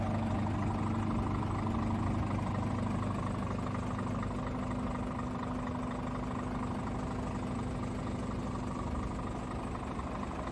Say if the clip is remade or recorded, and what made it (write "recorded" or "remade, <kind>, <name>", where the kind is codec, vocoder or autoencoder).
recorded